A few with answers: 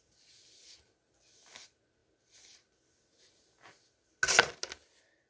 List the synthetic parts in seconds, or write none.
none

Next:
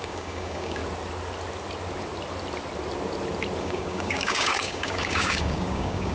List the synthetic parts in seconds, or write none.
0.0-0.8 (codec, DAC); 3.6-6.1

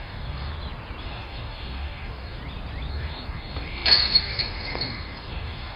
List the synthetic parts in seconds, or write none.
0.0-0.5 (codec, DAC); 1.0-2.4; 2.9-5.8

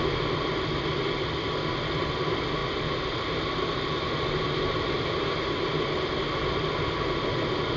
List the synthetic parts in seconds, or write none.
none

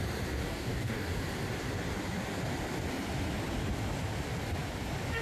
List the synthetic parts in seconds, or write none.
0.4-1.1 (codec, DAC)

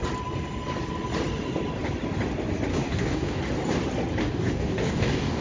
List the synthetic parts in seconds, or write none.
2.7-3.4 (codec, DAC); 4.2-5.4